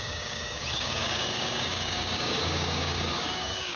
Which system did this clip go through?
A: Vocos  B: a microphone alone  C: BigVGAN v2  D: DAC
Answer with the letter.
D